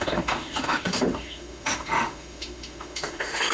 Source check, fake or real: fake